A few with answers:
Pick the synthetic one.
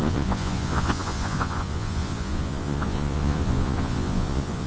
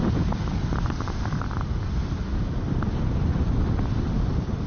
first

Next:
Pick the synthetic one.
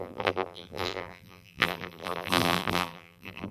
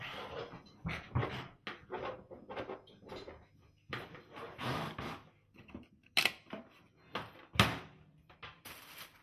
first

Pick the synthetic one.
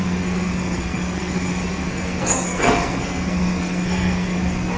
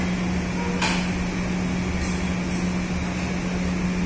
first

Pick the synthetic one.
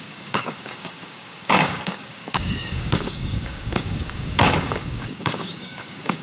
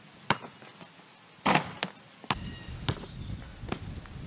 first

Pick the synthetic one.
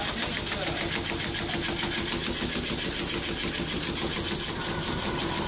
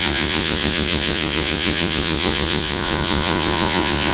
second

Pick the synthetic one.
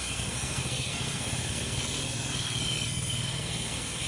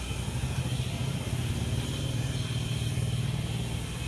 first